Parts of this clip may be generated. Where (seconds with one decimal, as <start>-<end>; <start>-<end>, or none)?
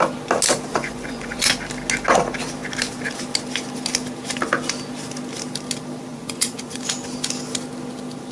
0.7-1.5; 6.1-6.8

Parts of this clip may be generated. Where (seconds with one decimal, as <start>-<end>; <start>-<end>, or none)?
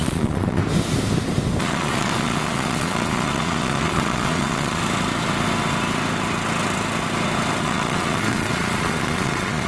0.0-0.6; 1.6-4.8; 7.6-9.7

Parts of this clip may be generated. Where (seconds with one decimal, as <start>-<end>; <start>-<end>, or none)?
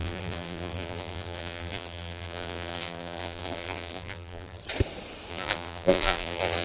0.0-4.6; 5.3-6.6